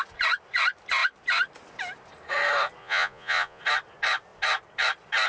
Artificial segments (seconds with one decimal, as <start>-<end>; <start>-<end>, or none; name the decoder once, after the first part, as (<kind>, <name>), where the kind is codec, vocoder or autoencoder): 2.8-3.6 (vocoder, Vocos)